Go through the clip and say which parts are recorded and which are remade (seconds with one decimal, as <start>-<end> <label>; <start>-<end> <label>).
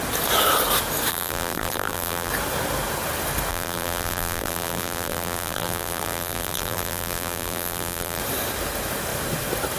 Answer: 0.0-1.1 recorded; 1.1-2.3 remade; 2.3-3.5 recorded; 3.5-8.2 remade; 8.2-9.8 recorded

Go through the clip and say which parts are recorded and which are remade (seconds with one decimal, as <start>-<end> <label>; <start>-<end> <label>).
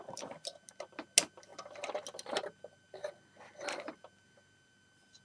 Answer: 0.0-5.2 recorded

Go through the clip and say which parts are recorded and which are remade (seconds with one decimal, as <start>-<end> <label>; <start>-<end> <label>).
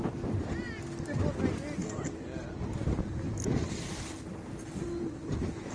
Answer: 0.0-5.7 recorded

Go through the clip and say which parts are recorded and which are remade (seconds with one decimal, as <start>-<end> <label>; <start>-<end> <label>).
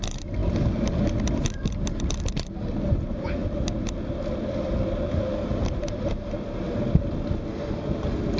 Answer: 0.0-8.4 recorded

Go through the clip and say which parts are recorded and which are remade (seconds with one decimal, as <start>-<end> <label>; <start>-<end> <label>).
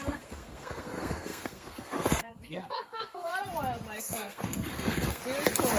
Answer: 0.0-3.3 remade; 3.3-4.0 recorded; 4.0-5.2 remade; 5.2-5.8 recorded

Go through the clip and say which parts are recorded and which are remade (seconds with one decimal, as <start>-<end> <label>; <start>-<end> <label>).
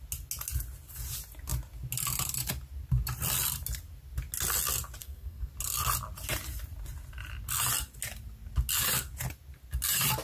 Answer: 0.0-5.0 recorded; 5.0-5.5 remade; 5.5-10.2 recorded